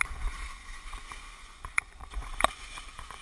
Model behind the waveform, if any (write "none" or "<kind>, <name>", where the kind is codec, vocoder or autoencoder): vocoder, Vocos